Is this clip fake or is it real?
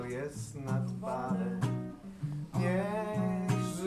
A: real